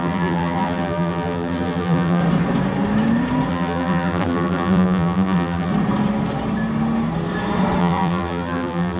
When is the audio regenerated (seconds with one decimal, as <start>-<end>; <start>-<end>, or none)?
0.0-2.2; 3.5-5.7; 7.8-9.0